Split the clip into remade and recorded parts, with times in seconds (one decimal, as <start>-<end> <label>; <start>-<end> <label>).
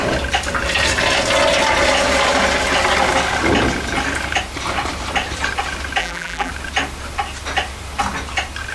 0.0-6.0 recorded; 6.0-6.5 remade; 6.5-8.7 recorded